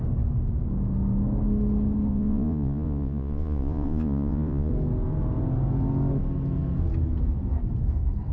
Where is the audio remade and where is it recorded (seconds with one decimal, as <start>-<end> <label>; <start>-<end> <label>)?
0.0-2.1 recorded; 2.1-4.7 remade; 4.7-8.3 recorded